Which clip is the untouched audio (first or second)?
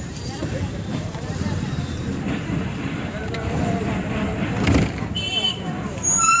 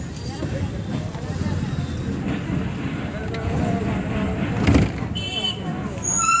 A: second